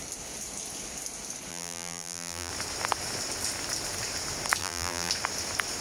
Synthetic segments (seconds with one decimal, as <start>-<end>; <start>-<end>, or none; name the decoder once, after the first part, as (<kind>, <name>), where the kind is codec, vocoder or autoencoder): 1.5-2.5 (vocoder, BigVGAN v2); 4.6-5.1